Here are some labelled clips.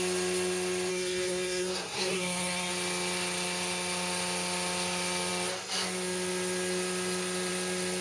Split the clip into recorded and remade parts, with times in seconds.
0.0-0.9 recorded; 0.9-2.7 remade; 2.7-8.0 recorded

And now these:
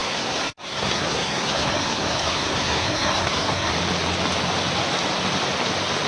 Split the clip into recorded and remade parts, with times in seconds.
0.0-3.7 remade; 3.7-6.1 recorded

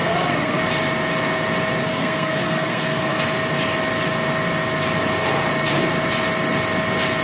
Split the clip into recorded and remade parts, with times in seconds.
0.0-0.6 remade; 0.6-1.8 recorded; 1.8-3.2 remade; 3.2-7.2 recorded

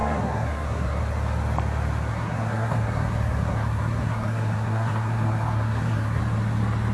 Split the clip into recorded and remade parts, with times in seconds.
0.0-1.0 remade; 1.0-2.1 recorded; 2.1-6.2 remade; 6.2-6.9 recorded

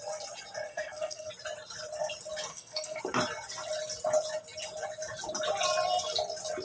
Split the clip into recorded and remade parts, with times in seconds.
0.0-0.7 recorded; 0.7-1.3 remade; 1.3-2.5 recorded; 2.5-3.0 remade; 3.0-6.6 recorded

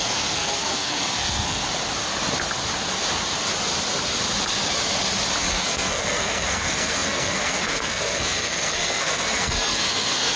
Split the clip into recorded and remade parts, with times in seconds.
0.0-1.6 remade; 1.6-5.5 recorded; 5.5-10.4 remade